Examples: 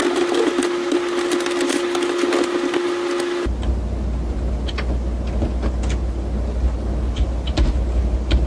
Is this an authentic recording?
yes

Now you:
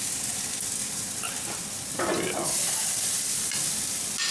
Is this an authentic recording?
yes